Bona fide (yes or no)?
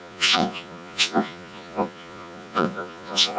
no